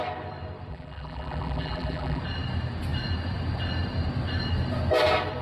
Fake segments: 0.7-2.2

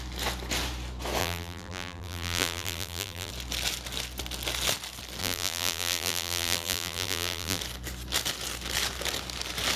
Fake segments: 1.2-3.3; 5.2-7.6

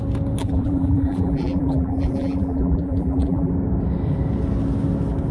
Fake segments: 0.4-3.5

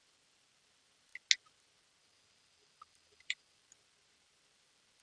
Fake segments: 2.0-3.6

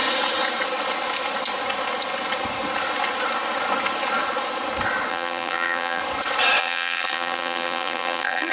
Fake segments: 5.1-6.0; 6.6-8.5

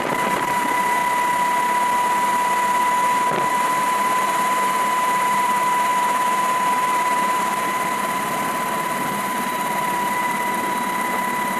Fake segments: 0.0-1.0; 3.5-11.6

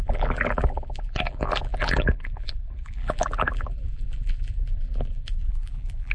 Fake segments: 0.0-6.1